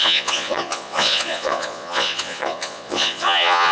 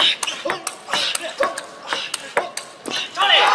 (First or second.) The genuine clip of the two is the second